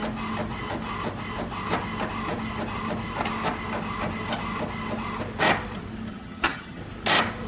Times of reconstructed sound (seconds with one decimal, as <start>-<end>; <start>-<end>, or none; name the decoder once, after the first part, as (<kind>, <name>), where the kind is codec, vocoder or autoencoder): 6.1-6.8 (vocoder, HiFi-GAN)